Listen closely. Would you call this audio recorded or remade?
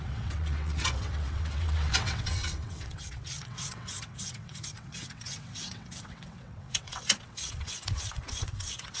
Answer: remade